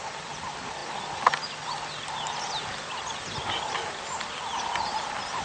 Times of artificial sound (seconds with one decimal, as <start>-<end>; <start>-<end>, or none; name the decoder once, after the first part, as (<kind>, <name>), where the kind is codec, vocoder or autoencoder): none